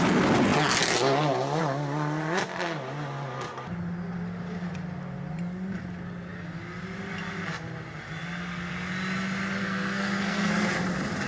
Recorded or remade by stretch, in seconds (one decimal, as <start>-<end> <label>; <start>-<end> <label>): 0.0-9.6 recorded; 9.6-10.5 remade; 10.5-11.3 recorded

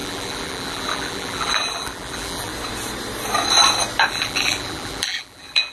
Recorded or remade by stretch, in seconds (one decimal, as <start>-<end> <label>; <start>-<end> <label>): 0.0-2.5 remade; 2.5-4.1 recorded; 4.1-5.7 remade

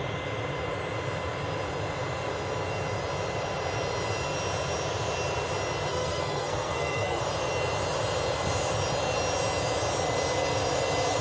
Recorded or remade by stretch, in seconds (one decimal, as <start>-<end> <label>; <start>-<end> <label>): 0.0-5.9 recorded; 5.9-7.2 remade; 7.2-11.2 recorded

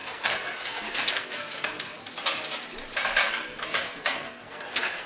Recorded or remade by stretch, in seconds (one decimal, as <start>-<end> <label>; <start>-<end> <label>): 0.0-2.0 remade; 2.0-3.2 recorded; 3.2-5.1 remade

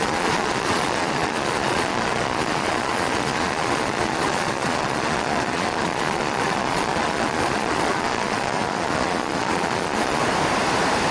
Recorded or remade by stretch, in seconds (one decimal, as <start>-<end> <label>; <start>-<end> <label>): 0.0-10.2 remade; 10.2-11.1 recorded

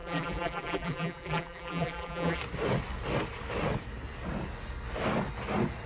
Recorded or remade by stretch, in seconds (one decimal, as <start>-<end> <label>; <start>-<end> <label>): 0.0-2.4 remade; 2.4-5.9 recorded

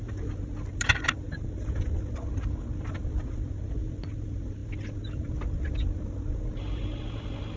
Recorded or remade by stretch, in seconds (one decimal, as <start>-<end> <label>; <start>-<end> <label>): 0.0-7.6 recorded

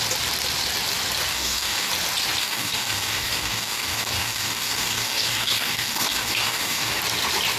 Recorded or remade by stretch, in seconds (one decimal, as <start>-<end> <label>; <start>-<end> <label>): 0.0-1.3 recorded; 1.3-1.9 remade; 1.9-2.4 recorded; 2.4-7.0 remade; 7.0-7.6 recorded